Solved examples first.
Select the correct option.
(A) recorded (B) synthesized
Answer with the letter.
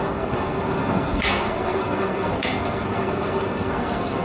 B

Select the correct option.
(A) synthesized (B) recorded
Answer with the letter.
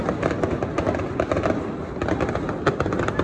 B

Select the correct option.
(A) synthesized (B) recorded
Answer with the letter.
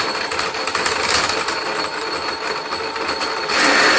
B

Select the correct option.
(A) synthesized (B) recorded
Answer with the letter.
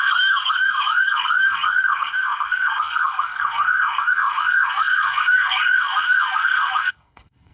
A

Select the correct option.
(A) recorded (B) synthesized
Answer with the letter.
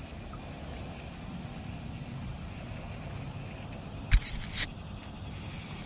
A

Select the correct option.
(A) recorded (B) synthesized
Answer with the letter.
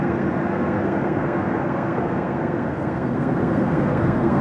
B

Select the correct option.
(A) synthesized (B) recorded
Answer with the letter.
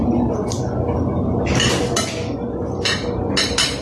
B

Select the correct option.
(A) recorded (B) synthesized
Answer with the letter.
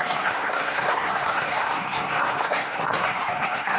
B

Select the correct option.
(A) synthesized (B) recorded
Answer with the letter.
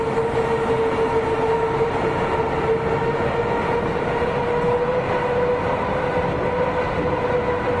B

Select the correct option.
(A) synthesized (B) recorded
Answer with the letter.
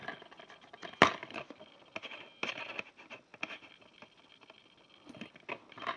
B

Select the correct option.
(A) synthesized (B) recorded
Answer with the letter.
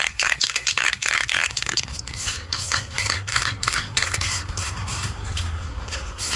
A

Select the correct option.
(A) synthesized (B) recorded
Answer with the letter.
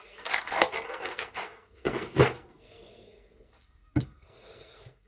A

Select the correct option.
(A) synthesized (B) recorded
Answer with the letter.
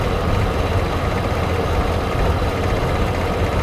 B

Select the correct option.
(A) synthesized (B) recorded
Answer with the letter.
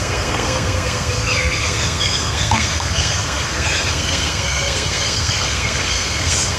A